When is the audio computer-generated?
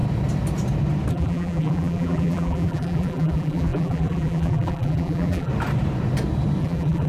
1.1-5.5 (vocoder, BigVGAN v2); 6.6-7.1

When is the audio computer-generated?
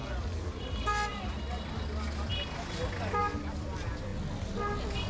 none